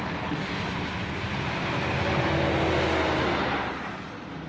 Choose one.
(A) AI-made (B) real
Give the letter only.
B